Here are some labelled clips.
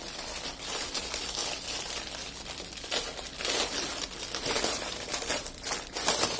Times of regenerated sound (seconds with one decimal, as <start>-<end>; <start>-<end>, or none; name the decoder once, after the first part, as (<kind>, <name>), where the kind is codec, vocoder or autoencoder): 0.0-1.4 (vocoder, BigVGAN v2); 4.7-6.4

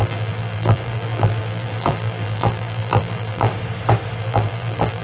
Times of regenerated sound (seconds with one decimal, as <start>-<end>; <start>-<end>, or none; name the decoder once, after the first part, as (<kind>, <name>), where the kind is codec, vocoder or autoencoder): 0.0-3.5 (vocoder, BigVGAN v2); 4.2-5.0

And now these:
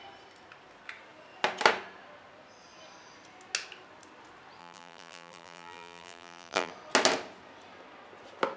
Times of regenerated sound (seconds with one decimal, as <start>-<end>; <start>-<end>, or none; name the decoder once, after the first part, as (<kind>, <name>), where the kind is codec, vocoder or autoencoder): 4.6-6.7 (vocoder, BigVGAN v2)

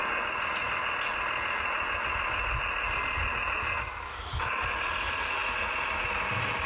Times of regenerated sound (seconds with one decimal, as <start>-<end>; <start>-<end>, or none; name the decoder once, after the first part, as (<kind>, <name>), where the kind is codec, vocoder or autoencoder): none